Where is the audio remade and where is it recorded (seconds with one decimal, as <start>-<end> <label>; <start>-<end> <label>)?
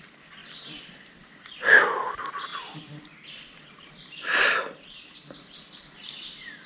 0.0-0.4 recorded; 0.4-1.6 remade; 1.6-2.5 recorded; 2.5-6.7 remade